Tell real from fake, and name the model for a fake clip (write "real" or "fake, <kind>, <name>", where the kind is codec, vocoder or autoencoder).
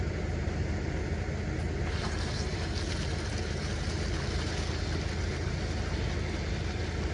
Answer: real